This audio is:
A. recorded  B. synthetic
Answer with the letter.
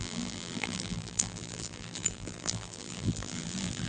B